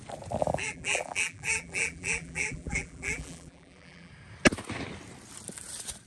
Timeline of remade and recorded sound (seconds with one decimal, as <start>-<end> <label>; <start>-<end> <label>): 0.0-0.4 recorded; 0.4-4.1 remade; 4.1-6.1 recorded